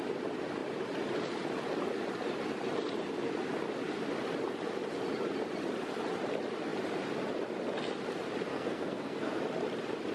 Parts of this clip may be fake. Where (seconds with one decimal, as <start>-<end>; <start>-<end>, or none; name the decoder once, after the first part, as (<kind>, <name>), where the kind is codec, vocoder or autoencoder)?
8.5-9.4 (codec, SNAC)